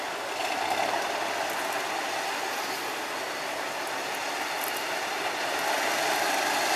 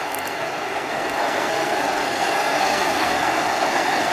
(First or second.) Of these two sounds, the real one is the first